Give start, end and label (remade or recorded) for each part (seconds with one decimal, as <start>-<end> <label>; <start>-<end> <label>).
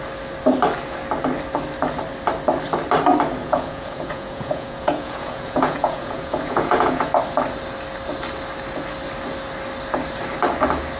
0.0-3.4 recorded; 3.4-7.1 remade; 7.1-11.0 recorded